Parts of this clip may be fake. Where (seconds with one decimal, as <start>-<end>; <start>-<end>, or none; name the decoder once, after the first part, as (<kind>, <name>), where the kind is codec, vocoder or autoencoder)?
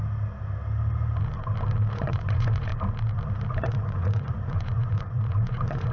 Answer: 1.9-2.7 (vocoder, Vocos); 3.5-5.9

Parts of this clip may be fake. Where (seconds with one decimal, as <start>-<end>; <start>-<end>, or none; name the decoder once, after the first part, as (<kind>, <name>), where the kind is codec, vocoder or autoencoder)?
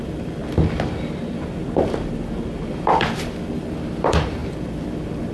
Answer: 0.0-0.4 (vocoder, BigVGAN v2); 2.7-5.3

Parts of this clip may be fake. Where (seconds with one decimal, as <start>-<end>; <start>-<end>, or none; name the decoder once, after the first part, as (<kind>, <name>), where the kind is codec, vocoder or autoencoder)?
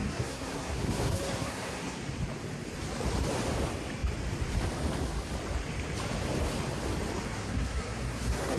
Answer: 0.0-2.0 (codec, SNAC); 7.4-8.6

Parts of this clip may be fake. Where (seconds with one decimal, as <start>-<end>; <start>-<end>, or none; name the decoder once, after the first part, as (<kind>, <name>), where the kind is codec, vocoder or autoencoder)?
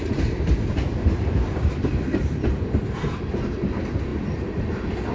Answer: 0.0-1.8 (vocoder, BigVGAN v2)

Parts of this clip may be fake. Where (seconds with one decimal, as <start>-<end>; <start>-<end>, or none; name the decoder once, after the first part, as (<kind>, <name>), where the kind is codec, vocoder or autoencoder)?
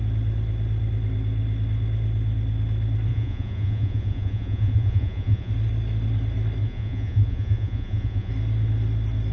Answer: 3.1-5.5 (vocoder, Vocos); 6.6-8.3